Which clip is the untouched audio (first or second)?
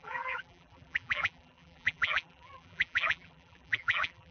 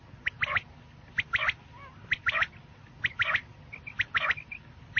second